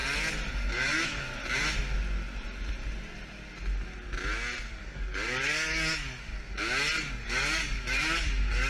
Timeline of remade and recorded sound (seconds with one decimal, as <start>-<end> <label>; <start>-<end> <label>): 0.0-0.5 recorded; 0.5-1.3 remade; 1.3-4.8 recorded; 4.8-6.3 remade; 6.3-7.1 recorded; 7.1-8.7 remade